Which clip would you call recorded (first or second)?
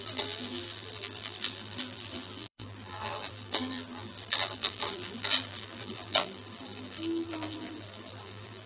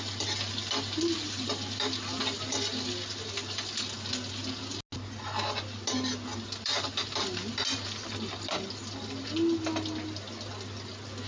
second